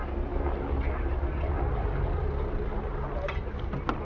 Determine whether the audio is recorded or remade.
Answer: recorded